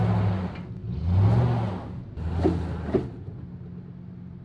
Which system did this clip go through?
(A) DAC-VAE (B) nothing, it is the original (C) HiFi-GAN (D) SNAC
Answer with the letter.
B